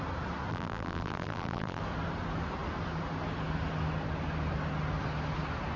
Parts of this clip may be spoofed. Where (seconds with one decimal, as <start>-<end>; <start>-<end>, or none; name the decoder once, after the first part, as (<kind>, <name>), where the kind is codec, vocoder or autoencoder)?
0.5-1.8 (vocoder, BigVGAN v2)